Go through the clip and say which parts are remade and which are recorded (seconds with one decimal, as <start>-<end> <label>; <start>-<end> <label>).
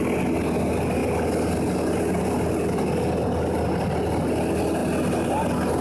0.0-5.8 recorded